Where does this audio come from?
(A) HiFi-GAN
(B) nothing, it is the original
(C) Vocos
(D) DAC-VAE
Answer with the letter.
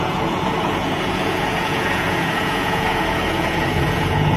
C